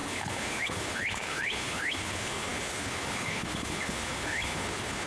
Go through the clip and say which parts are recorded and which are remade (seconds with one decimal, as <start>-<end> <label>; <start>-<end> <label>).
0.0-5.1 remade